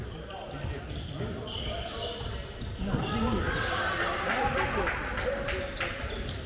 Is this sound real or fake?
real